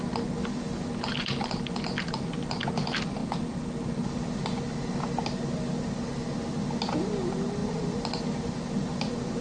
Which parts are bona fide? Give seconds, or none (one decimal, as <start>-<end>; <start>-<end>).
0.0-9.4